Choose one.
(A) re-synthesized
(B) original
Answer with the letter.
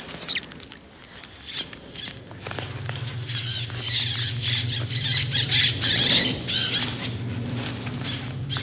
B